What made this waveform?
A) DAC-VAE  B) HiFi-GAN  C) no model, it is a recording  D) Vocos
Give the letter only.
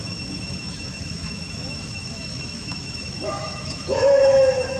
A